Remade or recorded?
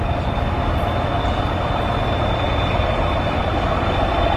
recorded